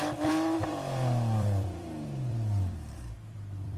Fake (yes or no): yes